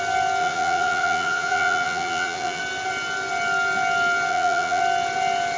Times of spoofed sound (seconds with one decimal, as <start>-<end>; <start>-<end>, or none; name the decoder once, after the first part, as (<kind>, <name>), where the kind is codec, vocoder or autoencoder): 0.4-2.6 (vocoder, Vocos); 4.3-4.8